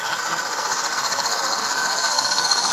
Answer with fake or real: fake